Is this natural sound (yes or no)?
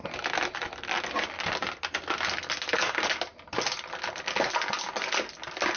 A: yes